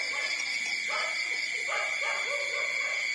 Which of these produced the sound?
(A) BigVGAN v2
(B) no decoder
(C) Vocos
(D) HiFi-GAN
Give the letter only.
B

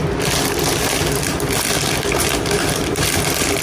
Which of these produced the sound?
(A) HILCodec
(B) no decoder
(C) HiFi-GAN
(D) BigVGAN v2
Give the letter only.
D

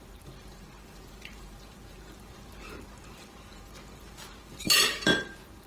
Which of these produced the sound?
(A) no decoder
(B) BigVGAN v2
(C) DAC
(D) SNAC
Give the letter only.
B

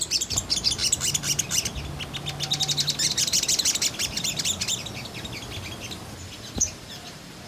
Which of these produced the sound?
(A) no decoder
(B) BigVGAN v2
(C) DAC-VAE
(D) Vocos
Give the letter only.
A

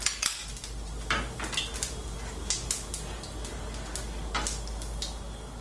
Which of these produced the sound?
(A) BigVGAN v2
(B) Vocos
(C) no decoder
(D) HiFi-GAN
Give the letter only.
C